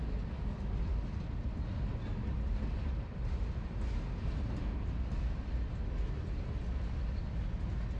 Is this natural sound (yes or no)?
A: yes